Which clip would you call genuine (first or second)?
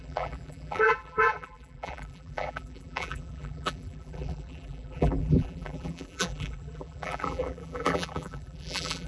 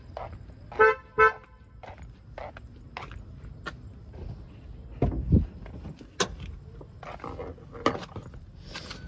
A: second